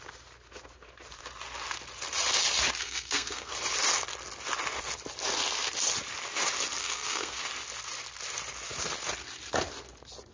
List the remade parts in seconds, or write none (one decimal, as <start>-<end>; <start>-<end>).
2.8-3.5; 6.8-7.4